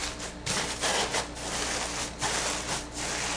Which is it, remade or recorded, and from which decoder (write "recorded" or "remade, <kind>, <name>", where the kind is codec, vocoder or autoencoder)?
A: recorded